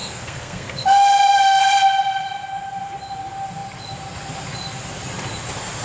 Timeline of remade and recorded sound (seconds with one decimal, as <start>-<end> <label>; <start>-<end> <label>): 0.0-1.6 remade; 1.6-5.8 recorded